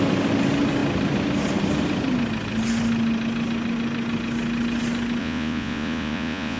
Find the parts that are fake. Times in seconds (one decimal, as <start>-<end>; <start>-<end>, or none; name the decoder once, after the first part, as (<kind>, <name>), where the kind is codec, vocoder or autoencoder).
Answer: 5.2-6.6 (vocoder, Vocos)